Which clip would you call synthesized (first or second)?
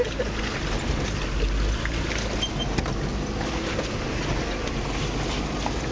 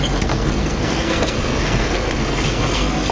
second